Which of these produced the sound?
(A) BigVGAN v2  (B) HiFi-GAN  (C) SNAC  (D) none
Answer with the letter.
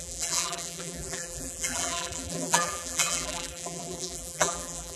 A